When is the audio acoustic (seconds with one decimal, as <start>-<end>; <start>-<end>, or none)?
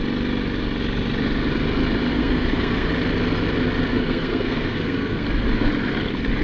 0.0-2.1; 2.9-3.9; 5.7-6.4